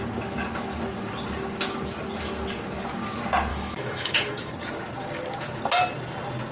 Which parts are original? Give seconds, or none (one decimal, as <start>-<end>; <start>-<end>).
0.0-3.5; 4.5-6.5